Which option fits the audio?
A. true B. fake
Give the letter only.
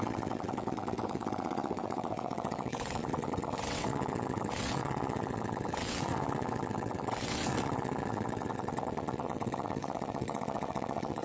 B